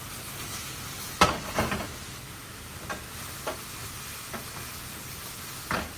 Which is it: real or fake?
real